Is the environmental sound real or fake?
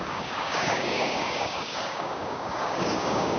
fake